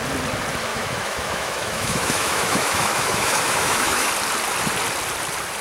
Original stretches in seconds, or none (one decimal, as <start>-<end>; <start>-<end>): 0.0-0.7; 4.1-5.6